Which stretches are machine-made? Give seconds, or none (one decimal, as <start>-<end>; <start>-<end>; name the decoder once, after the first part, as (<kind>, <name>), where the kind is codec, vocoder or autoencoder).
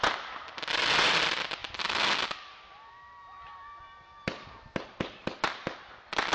none